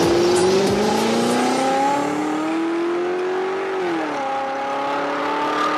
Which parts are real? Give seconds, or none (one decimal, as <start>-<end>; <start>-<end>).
0.0-0.4; 0.9-5.8